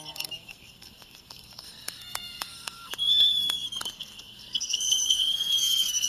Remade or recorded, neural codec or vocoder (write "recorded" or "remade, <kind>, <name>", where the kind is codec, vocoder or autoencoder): remade, codec, SNAC